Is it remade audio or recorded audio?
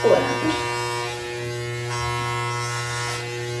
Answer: recorded